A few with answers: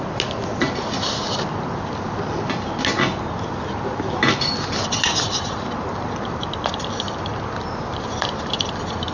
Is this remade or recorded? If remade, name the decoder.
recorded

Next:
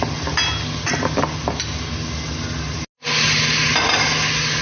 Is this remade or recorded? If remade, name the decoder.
recorded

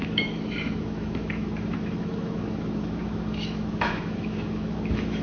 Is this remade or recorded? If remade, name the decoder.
remade, autoencoder, DAC-VAE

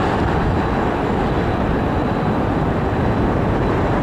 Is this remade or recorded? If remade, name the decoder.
recorded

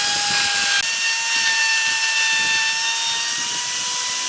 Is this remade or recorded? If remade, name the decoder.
recorded